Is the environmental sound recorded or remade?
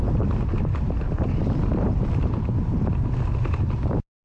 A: recorded